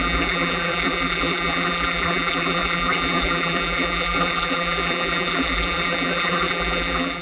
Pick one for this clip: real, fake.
fake